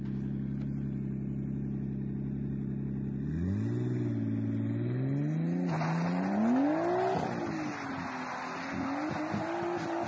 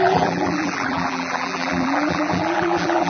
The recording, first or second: first